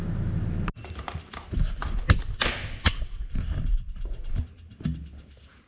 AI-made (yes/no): no